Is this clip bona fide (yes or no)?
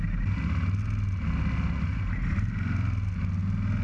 yes